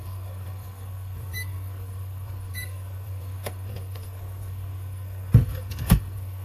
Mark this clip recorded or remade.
remade